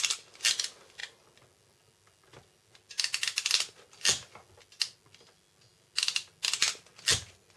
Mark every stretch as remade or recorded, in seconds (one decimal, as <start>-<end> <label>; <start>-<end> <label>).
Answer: 0.0-7.6 recorded